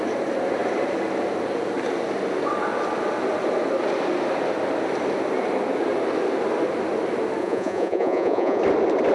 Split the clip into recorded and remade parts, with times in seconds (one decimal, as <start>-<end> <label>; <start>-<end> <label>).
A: 0.0-7.4 recorded; 7.4-8.6 remade; 8.6-9.1 recorded